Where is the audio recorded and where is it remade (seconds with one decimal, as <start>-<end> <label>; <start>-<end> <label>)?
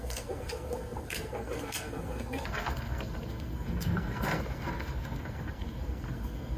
0.0-6.6 remade